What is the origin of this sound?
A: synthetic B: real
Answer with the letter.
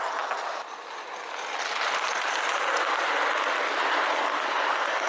B